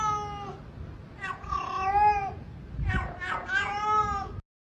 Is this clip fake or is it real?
real